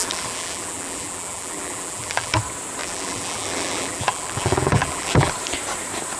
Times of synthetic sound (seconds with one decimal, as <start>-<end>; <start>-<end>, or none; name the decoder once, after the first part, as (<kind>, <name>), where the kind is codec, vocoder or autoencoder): 0.0-2.4 (vocoder, BigVGAN v2); 2.8-5.3